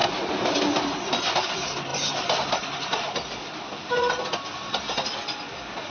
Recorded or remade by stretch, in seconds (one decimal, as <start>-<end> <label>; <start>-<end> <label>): 0.0-5.9 recorded